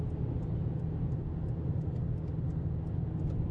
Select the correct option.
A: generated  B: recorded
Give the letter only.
B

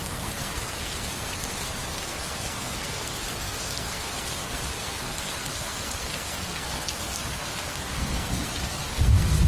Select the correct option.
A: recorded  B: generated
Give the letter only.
B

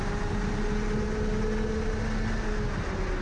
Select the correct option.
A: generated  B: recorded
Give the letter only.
B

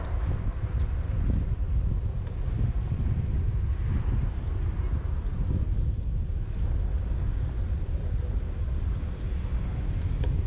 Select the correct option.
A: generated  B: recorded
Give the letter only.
B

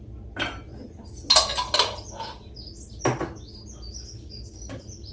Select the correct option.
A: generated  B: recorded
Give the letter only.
B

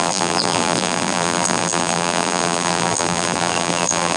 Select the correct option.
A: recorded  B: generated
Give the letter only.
B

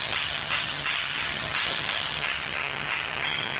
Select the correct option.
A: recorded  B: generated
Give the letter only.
B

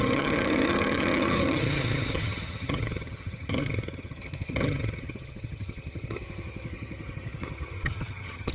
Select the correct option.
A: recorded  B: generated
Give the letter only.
B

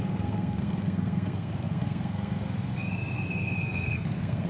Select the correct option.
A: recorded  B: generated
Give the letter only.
B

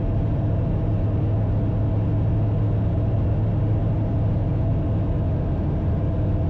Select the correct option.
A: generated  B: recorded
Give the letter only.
B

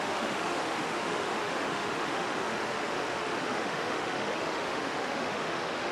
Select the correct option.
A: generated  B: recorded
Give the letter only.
A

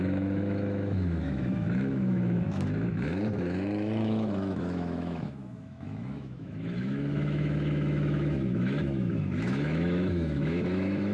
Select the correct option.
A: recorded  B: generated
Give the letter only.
B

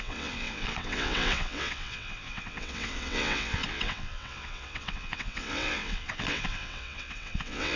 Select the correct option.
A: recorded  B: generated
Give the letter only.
B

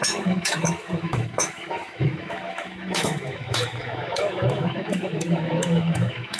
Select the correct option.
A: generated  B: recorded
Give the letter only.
A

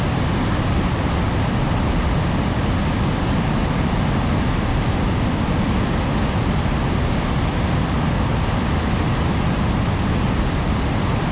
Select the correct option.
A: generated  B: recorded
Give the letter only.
B